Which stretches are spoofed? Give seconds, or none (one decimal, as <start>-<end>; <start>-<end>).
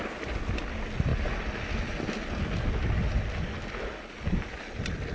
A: none